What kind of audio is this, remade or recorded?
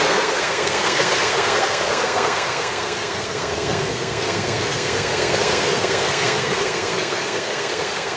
remade